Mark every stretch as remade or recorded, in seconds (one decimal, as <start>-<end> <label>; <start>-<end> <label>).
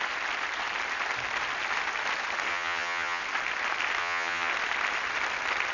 0.0-2.5 recorded; 2.5-3.2 remade; 3.2-4.0 recorded; 4.0-4.5 remade; 4.5-5.7 recorded